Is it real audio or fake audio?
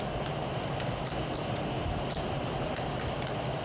real